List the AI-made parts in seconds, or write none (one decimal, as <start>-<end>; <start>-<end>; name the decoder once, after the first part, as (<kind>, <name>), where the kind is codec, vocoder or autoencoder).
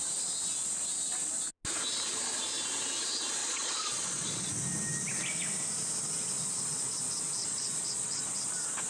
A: 3.4-4.5 (vocoder, Vocos); 7.4-8.3